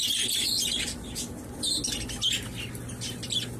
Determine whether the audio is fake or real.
real